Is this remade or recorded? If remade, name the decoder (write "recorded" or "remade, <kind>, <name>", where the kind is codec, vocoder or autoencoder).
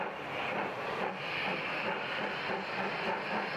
recorded